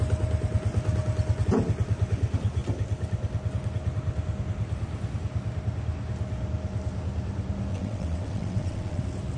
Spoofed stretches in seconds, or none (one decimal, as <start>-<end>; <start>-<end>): 7.7-9.0